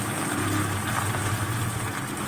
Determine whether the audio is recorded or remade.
recorded